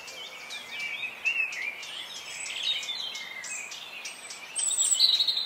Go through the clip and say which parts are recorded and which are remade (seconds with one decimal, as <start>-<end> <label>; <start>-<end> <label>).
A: 0.0-5.5 recorded